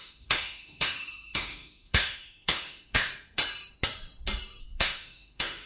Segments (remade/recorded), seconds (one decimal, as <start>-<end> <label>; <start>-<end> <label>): 0.0-3.1 remade; 3.1-4.6 recorded; 4.6-5.7 remade